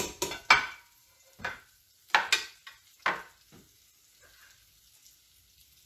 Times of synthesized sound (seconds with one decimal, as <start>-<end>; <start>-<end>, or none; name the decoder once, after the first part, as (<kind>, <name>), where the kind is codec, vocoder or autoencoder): 1.0-1.6 (vocoder, BigVGAN v2)